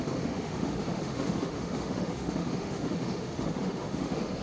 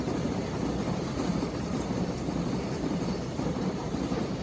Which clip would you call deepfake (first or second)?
first